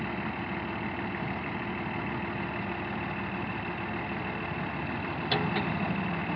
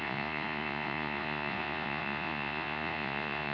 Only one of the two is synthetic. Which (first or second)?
second